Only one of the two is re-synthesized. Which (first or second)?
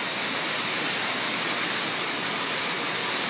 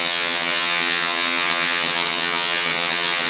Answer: second